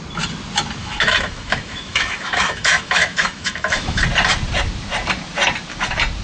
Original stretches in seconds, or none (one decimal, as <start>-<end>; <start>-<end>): 0.0-0.8; 4.0-6.2